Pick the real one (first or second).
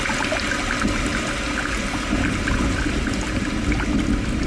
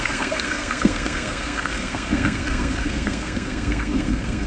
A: first